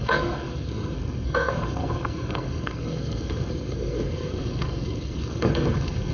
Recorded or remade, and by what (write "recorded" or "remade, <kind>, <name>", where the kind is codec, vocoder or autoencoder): remade, codec, SNAC